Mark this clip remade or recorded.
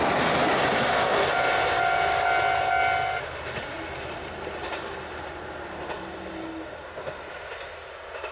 recorded